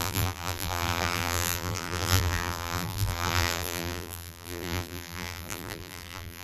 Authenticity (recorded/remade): remade